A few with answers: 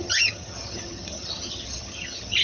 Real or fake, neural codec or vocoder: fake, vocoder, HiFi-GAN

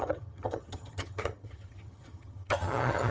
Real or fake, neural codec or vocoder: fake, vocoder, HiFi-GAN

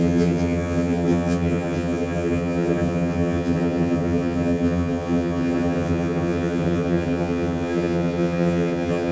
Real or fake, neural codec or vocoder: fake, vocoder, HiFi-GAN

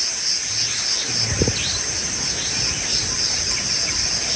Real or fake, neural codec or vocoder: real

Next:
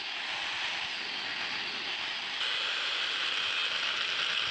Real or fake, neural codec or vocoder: real